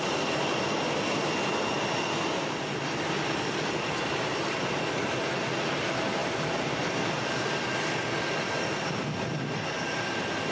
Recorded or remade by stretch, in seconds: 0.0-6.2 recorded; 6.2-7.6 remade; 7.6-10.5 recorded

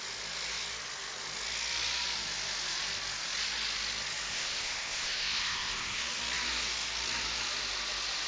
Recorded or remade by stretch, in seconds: 0.0-4.3 recorded; 4.3-6.0 remade; 6.0-8.3 recorded

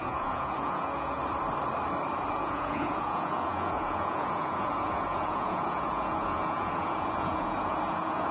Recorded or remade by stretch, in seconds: 0.0-1.2 remade; 1.2-2.3 recorded; 2.3-8.3 remade

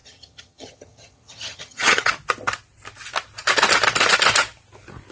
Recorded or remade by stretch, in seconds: 0.0-2.1 remade; 2.1-5.1 recorded

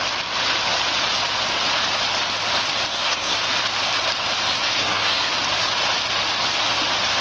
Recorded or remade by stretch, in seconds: 0.0-2.9 recorded; 2.9-3.4 remade; 3.4-4.5 recorded; 4.5-5.3 remade; 5.3-7.2 recorded

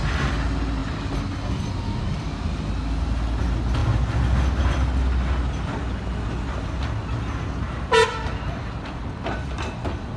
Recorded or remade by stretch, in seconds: 0.0-10.2 recorded

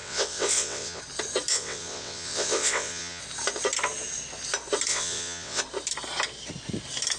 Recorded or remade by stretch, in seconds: 0.0-1.0 remade; 1.0-1.5 recorded; 1.5-3.2 remade; 3.2-4.9 recorded; 4.9-5.6 remade; 5.6-7.2 recorded